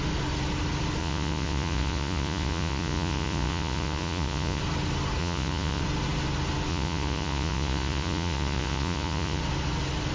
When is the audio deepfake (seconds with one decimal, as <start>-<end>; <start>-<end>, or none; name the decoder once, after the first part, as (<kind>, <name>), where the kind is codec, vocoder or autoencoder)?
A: 1.0-4.6 (vocoder, Vocos); 5.2-5.8; 6.7-9.4